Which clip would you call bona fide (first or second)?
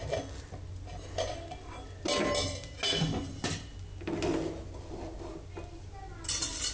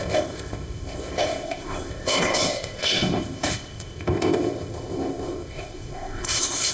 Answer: first